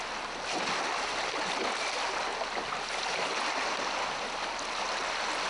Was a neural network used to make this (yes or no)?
no